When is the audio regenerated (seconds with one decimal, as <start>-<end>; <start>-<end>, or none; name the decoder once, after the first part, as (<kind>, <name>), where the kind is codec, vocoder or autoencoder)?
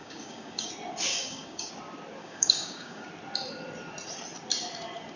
0.0-0.7 (codec, DAC); 1.1-1.7; 2.2-3.1